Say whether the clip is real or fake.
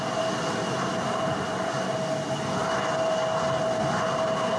real